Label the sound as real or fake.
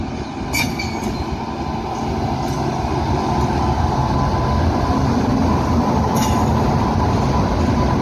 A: real